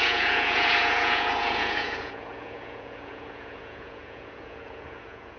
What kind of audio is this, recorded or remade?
remade